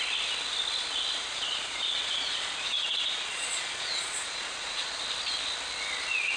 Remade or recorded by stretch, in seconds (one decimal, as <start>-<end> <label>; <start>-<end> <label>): 0.0-1.2 recorded; 1.2-5.0 remade; 5.0-6.4 recorded